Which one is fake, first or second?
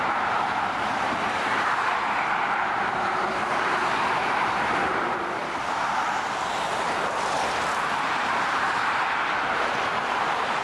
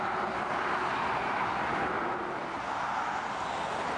first